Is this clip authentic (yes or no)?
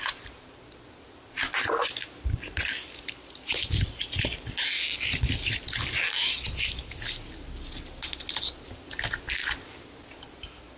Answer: yes